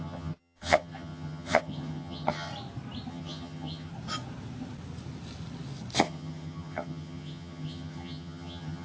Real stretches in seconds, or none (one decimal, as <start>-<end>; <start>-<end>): 2.5-3.1; 3.9-6.0